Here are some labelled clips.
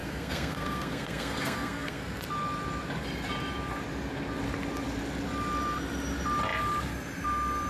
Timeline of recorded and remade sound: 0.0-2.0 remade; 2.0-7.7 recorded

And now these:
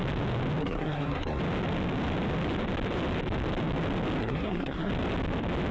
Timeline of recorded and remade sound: 0.0-0.6 recorded; 0.6-1.4 remade; 1.4-4.2 recorded; 4.2-4.9 remade; 4.9-5.7 recorded

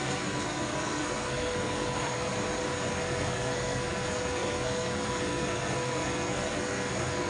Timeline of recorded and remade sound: 0.0-2.3 remade; 2.3-2.9 recorded; 2.9-7.3 remade

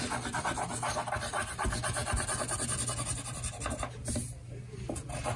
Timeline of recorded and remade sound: 0.0-5.4 recorded

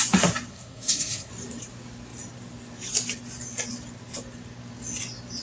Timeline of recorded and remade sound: 0.0-0.5 recorded; 0.5-1.3 remade; 1.3-5.4 recorded